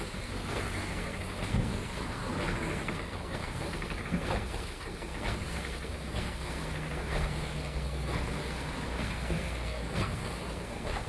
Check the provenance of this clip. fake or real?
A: fake